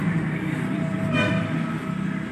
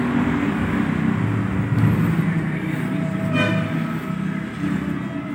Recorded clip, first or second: second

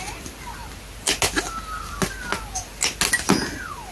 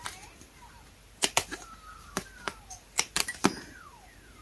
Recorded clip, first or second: first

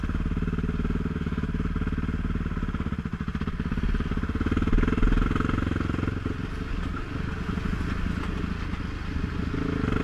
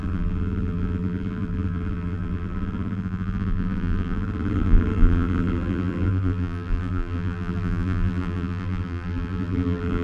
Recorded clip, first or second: first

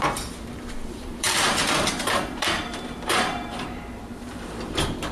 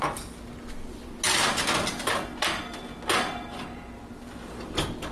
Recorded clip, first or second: second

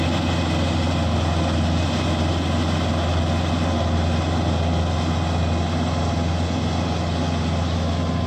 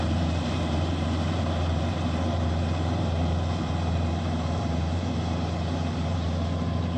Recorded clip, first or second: first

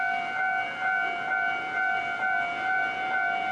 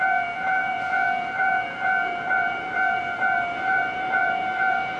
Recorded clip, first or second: first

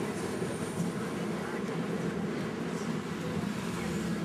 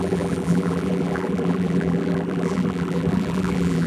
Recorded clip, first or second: first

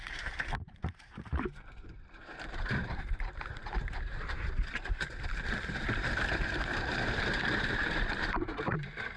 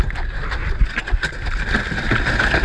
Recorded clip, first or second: second